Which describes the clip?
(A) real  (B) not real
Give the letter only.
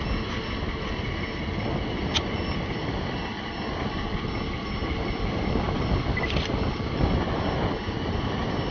A